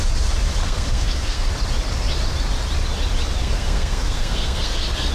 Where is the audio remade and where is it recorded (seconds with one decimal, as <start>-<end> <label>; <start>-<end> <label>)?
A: 0.0-0.6 recorded; 0.6-1.5 remade; 1.5-3.4 recorded; 3.4-5.1 remade